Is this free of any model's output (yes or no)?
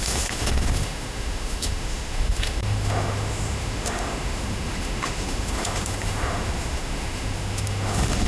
no